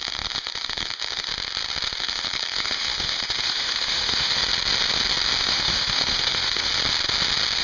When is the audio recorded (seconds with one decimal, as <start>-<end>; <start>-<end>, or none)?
1.3-2.0; 4.4-5.4; 6.7-7.6